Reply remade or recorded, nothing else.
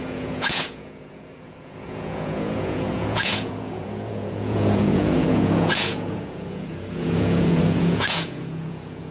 remade